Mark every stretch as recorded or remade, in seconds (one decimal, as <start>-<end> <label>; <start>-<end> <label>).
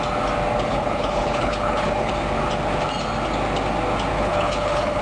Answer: 0.0-0.7 recorded; 0.7-2.1 remade; 2.1-4.1 recorded; 4.1-5.0 remade